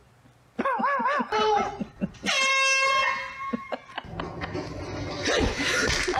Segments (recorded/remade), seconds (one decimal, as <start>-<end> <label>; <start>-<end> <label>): 0.0-6.2 recorded